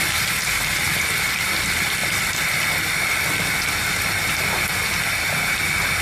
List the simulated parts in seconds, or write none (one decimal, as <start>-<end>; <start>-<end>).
none